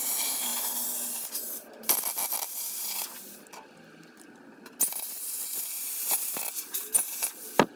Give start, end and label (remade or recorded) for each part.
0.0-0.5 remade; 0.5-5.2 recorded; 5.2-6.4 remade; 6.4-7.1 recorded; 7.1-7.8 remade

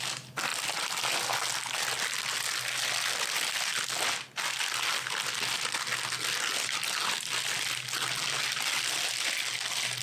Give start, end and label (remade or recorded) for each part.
0.0-10.0 recorded

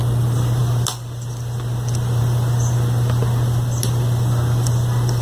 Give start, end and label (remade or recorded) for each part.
0.0-0.6 remade; 0.6-2.2 recorded; 2.2-5.2 remade

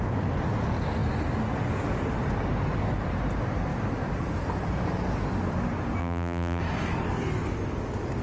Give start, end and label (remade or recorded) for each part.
0.0-6.0 recorded; 6.0-6.6 remade; 6.6-8.2 recorded

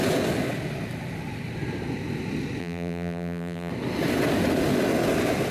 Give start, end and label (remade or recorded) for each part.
0.0-2.6 recorded; 2.6-3.7 remade; 3.7-5.5 recorded